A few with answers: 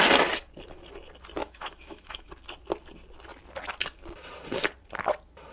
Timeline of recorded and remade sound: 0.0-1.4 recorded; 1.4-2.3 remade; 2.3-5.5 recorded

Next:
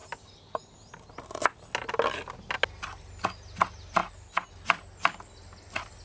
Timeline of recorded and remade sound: 0.0-6.0 recorded

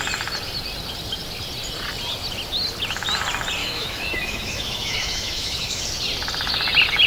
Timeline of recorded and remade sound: 0.0-3.6 recorded; 3.6-5.8 remade; 5.8-7.1 recorded

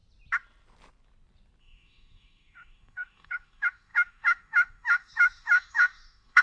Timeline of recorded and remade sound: 0.0-1.6 recorded; 1.6-6.4 remade

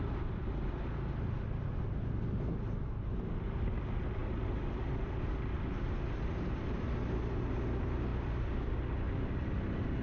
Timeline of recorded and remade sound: 0.0-10.0 recorded

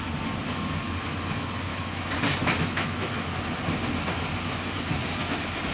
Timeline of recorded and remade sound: 0.0-1.7 recorded; 1.7-3.3 remade; 3.3-5.7 recorded